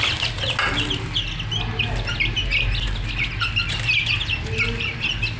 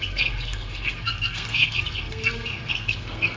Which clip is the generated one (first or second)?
second